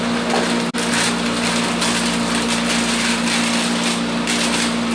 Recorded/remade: recorded